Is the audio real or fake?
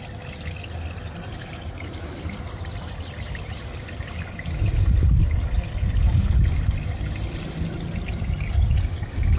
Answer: real